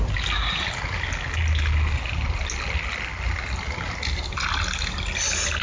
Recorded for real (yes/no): yes